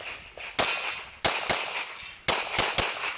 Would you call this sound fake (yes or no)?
no